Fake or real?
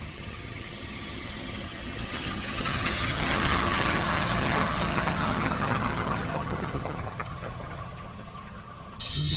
fake